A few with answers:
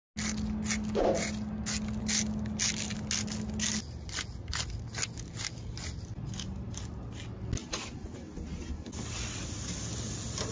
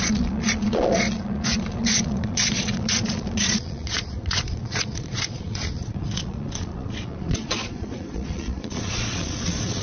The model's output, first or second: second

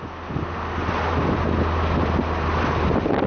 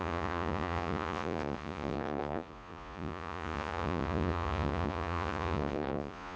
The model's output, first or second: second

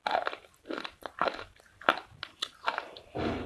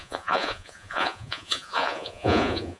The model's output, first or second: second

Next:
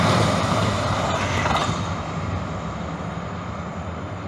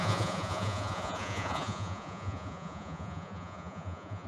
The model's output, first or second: second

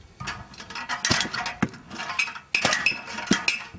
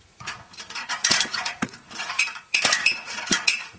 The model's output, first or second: second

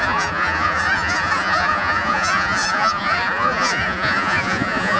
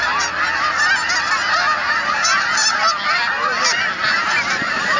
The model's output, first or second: first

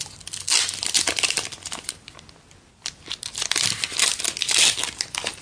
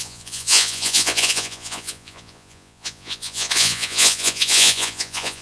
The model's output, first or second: second